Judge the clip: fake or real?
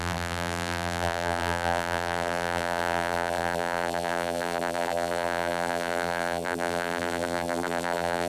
fake